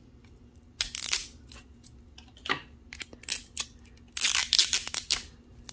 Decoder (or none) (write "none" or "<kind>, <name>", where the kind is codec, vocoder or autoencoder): none